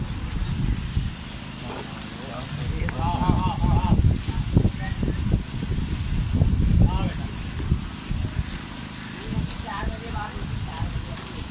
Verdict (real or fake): real